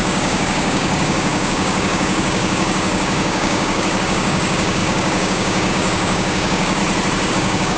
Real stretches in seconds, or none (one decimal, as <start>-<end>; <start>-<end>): 6.8-7.3